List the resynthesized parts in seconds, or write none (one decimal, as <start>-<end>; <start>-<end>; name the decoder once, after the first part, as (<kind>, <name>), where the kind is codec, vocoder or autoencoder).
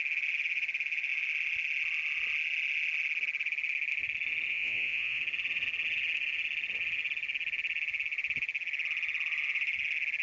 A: 4.5-5.2 (vocoder, Vocos)